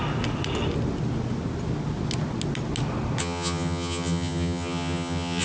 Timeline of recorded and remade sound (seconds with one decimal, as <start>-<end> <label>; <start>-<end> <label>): 0.0-3.2 recorded; 3.2-5.4 remade